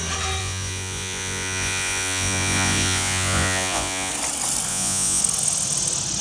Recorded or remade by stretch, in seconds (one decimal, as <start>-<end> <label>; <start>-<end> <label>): 0.0-0.4 recorded; 0.4-4.1 remade; 4.1-4.7 recorded; 4.7-5.2 remade; 5.2-6.2 recorded